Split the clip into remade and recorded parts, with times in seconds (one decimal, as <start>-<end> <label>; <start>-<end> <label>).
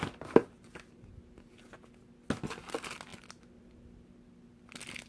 0.0-5.1 recorded